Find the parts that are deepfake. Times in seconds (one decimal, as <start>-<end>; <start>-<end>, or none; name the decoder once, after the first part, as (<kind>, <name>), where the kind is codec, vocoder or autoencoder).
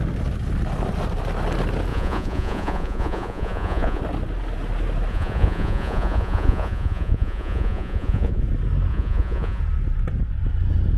1.9-4.0 (vocoder, Vocos); 5.1-8.4; 8.9-9.6